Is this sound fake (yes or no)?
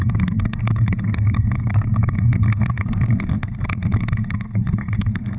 yes